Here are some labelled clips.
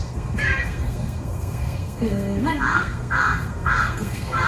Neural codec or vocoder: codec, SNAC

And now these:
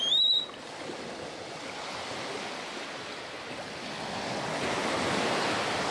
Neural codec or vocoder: none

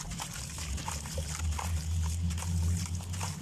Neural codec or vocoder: none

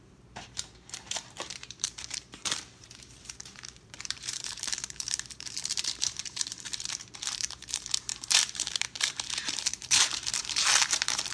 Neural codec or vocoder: vocoder, BigVGAN v2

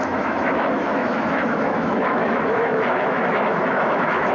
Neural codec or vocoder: autoencoder, DAC-VAE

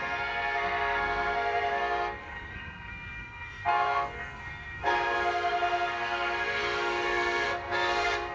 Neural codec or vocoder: codec, SNAC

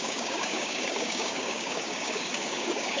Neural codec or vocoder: codec, DAC